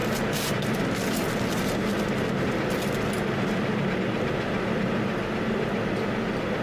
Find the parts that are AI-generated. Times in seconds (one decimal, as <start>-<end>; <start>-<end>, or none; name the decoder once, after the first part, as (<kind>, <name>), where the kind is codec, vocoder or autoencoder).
none